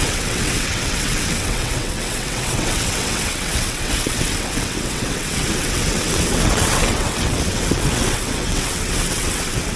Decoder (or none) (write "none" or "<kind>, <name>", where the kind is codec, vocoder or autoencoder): vocoder, WaveNeXt